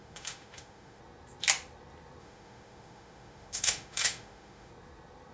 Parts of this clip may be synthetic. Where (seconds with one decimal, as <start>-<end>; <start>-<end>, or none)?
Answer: 0.0-1.0; 2.2-4.7